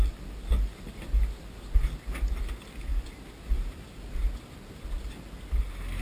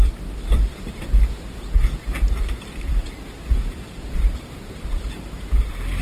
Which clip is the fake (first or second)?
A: second